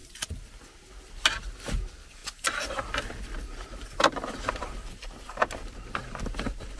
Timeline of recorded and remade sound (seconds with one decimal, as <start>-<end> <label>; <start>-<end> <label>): 0.0-6.8 recorded